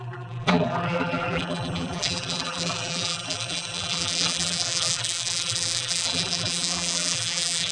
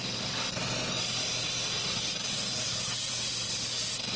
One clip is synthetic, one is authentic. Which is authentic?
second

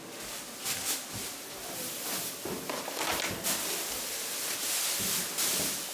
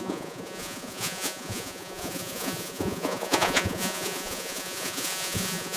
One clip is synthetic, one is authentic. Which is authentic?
first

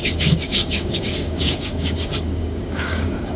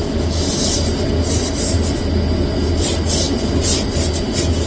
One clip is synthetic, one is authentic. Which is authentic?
second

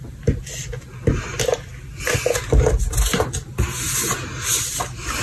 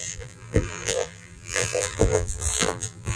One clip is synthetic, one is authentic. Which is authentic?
first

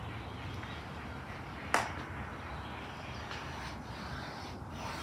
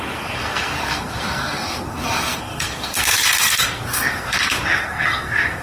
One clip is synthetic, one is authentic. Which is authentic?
first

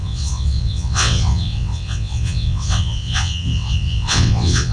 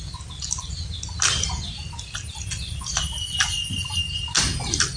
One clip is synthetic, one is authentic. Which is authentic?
second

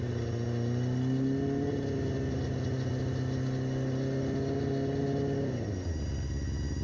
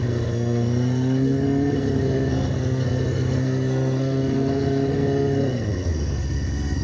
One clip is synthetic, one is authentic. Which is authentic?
first